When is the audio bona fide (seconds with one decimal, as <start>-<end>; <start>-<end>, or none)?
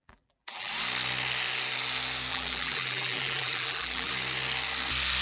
0.7-2.3; 4.1-5.2